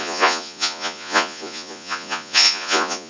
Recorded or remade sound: remade